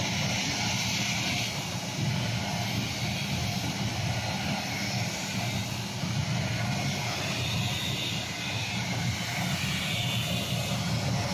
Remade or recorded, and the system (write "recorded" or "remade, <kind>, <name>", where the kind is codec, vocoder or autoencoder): recorded